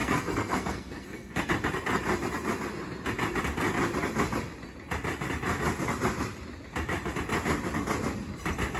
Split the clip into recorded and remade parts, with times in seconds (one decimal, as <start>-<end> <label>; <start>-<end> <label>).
0.0-1.5 remade; 1.5-8.8 recorded